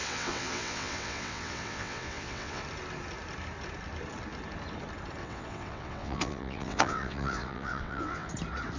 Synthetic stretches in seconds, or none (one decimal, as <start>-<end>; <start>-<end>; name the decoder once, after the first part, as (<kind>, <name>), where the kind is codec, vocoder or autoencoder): 0.0-2.6 (vocoder, WaveNeXt); 5.2-8.3